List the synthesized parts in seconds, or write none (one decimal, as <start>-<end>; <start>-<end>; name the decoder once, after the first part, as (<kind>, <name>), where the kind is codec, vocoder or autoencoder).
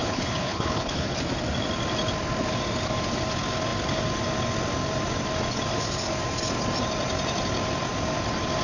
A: 0.0-1.1 (codec, HILCodec)